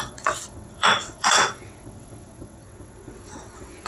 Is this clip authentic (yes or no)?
no